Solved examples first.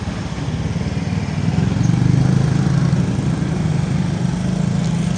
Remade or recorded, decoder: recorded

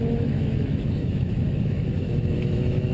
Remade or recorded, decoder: remade, autoencoder, DAC-VAE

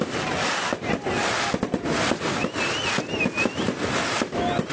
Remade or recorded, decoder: recorded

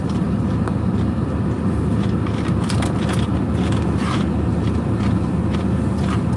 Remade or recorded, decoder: recorded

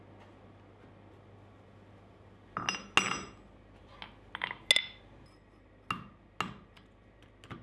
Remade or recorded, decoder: recorded